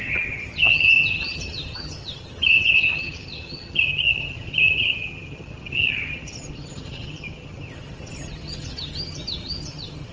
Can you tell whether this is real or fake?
fake